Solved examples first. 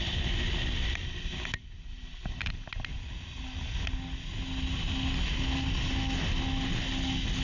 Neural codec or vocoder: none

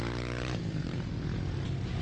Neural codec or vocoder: none